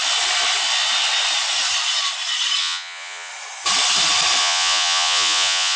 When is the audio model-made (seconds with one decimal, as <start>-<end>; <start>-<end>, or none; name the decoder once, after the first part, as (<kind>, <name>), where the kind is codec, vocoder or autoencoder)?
2.6-3.3 (vocoder, Vocos); 4.4-5.8